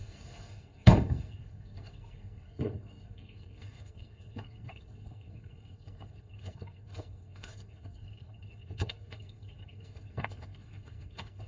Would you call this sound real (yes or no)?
no